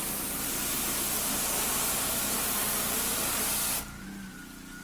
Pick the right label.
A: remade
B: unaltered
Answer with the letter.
B